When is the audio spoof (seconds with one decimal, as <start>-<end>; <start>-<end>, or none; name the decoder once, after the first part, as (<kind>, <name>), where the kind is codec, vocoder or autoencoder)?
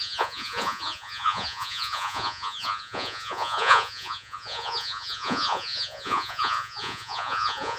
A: 0.0-7.8 (vocoder, Vocos)